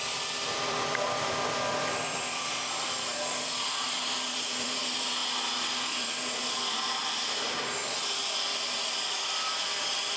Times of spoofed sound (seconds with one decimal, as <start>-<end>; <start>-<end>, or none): 0.0-5.2; 5.9-10.2